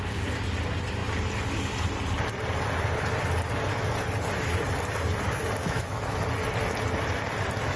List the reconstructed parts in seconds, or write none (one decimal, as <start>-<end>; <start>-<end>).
5.6-6.2